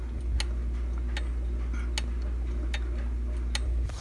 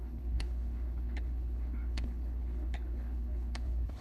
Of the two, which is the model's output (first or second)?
second